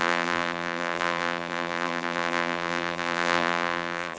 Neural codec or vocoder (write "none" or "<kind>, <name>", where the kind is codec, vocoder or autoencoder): vocoder, BigVGAN v2